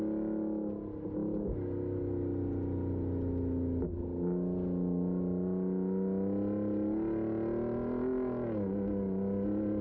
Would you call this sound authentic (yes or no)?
yes